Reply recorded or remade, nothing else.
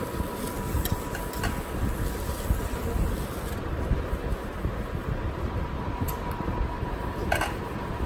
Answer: recorded